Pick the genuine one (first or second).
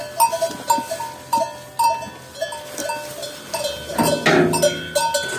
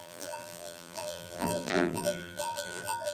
first